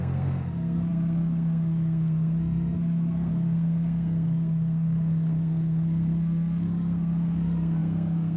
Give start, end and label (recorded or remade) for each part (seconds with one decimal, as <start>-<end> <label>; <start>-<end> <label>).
0.0-8.4 remade